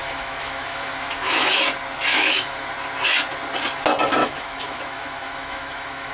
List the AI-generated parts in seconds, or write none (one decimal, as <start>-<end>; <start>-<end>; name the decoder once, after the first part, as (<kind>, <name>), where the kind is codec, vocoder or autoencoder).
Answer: 0.0-1.6 (autoencoder, DAC-VAE); 2.1-2.7; 4.2-6.1